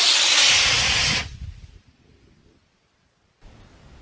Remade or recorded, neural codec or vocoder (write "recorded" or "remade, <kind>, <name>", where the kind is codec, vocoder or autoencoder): recorded